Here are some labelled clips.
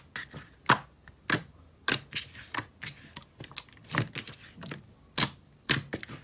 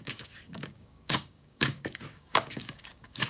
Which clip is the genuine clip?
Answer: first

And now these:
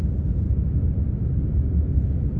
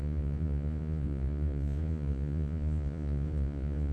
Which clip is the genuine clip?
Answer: first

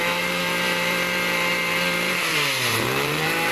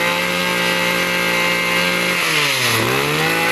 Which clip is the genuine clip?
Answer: second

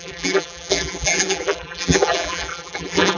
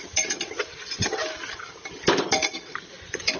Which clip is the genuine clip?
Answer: second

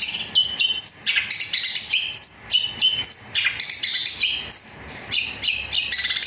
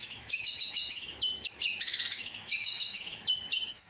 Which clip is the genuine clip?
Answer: first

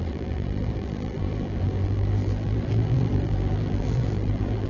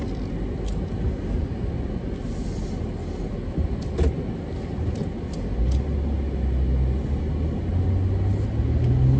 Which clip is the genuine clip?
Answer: second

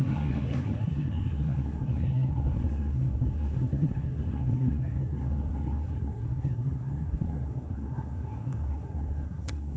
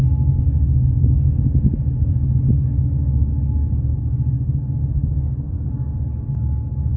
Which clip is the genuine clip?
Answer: second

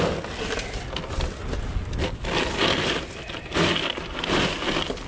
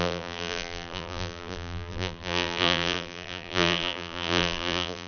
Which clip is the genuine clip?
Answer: first